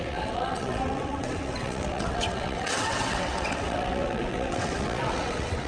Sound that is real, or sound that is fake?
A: fake